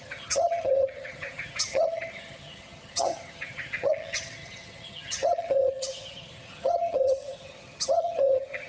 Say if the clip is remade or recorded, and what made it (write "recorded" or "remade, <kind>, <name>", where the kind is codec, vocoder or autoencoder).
remade, vocoder, HiFi-GAN